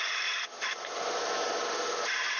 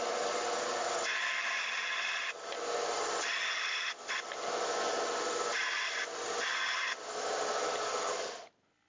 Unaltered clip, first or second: second